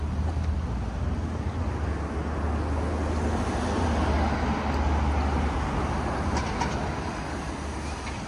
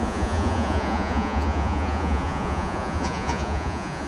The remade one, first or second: second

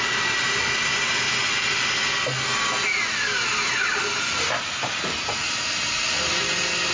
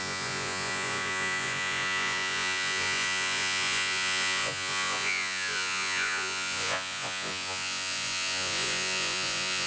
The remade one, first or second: second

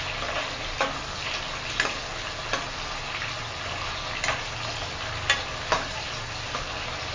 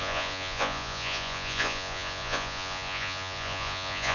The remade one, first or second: second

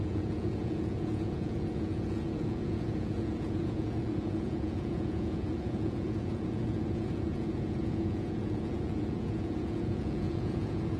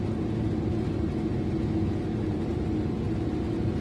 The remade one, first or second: first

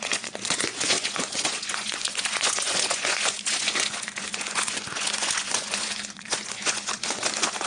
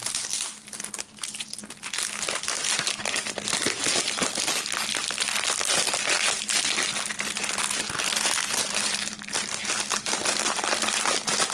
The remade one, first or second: first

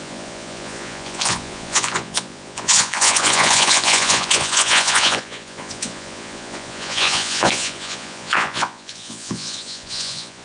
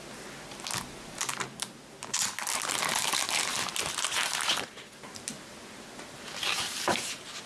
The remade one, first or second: first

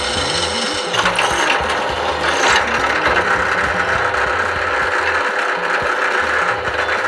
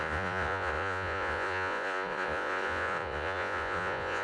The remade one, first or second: second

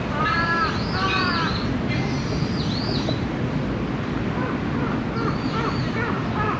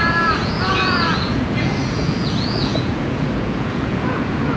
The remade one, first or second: second